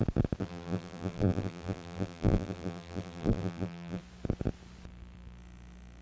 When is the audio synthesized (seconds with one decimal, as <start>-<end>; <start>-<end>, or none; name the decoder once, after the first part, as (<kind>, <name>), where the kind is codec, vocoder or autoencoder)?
0.4-4.0 (vocoder, BigVGAN v2)